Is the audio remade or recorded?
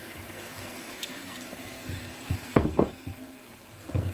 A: remade